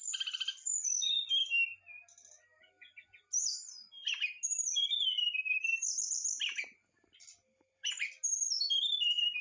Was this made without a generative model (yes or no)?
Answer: yes